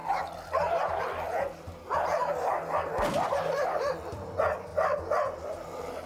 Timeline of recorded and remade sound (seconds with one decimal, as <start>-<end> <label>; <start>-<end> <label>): 0.0-2.1 recorded; 2.1-3.4 remade; 3.4-6.1 recorded